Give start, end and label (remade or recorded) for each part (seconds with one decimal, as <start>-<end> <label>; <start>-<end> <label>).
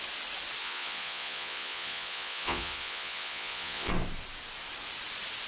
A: 0.0-0.6 recorded; 0.6-3.9 remade; 3.9-5.5 recorded